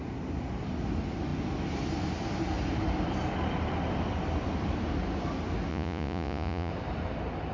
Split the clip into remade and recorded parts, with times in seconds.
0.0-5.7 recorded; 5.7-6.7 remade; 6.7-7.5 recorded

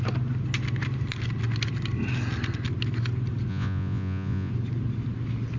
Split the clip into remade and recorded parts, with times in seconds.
0.0-3.5 recorded; 3.5-4.5 remade; 4.5-5.6 recorded

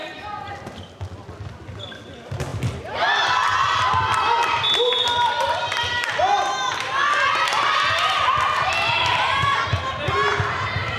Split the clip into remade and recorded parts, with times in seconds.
0.0-11.0 recorded